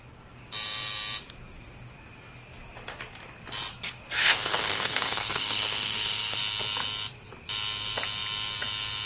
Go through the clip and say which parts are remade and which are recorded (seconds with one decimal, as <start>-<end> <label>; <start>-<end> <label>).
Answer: 0.0-4.2 recorded; 4.2-6.4 remade; 6.4-9.1 recorded